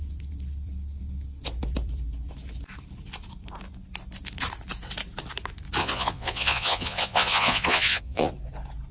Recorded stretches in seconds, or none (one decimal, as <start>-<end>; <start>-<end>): 0.0-5.8; 8.3-8.9